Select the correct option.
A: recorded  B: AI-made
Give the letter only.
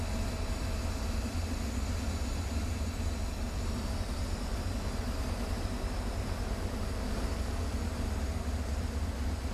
A